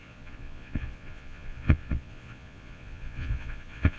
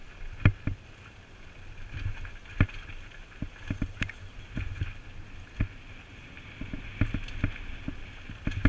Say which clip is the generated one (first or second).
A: first